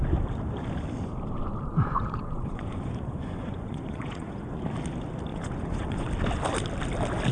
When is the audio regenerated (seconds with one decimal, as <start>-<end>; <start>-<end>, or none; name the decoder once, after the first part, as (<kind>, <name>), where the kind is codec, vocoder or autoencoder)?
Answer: 1.7-4.6 (vocoder, Vocos); 5.3-6.1